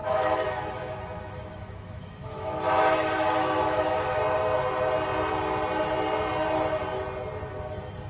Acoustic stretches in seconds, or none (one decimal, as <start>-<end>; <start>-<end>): 4.2-8.1